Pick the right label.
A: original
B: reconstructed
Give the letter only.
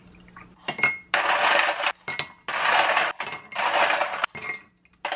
A